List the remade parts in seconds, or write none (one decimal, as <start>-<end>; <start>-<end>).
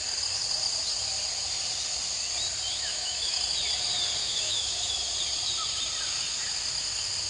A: 2.9-3.4; 4.2-5.1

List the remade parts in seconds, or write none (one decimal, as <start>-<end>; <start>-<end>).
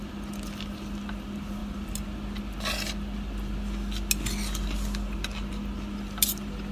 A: none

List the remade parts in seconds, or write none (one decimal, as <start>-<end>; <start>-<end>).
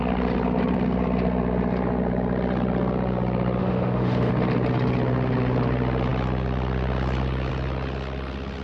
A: 3.6-4.3